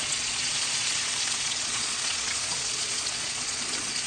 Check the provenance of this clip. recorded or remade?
remade